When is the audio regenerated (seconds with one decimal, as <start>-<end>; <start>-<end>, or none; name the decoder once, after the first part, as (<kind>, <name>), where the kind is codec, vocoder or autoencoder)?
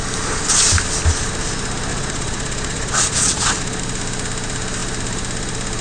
1.9-3.8 (vocoder, Vocos)